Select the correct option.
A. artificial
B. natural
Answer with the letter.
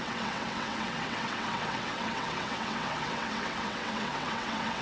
A